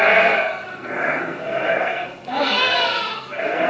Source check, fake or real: fake